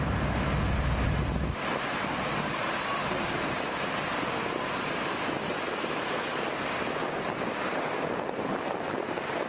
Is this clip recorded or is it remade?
recorded